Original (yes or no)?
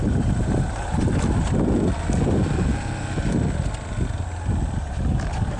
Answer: yes